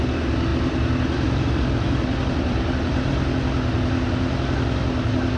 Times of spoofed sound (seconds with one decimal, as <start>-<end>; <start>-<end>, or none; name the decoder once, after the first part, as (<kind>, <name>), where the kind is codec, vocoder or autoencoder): 0.5-3.1 (vocoder, BigVGAN v2)